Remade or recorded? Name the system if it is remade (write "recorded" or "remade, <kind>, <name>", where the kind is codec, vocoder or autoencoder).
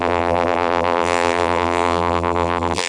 remade, vocoder, BigVGAN v2